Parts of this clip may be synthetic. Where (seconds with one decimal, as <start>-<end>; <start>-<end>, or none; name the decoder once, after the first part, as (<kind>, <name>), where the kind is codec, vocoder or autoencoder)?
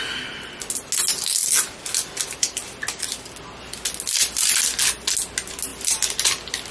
1.4-3.4 (vocoder, BigVGAN v2)